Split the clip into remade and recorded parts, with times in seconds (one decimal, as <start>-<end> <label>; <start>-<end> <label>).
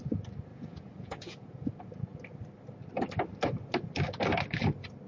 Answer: 0.0-0.5 recorded; 0.5-1.7 remade; 1.7-5.1 recorded